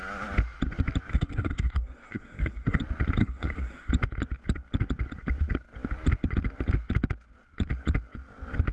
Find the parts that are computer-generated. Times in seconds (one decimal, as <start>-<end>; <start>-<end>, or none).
1.1-2.8; 3.2-3.9